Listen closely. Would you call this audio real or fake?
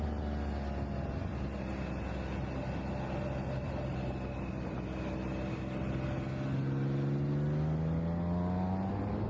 real